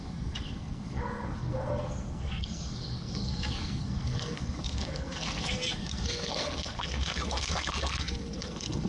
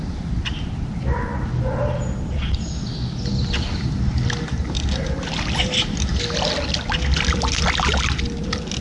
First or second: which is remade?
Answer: first